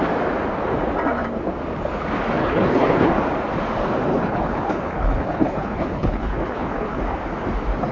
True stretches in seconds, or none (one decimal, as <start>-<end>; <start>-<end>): 0.0-2.4; 3.1-4.1; 7.0-7.9